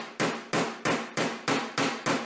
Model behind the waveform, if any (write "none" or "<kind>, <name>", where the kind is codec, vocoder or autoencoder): none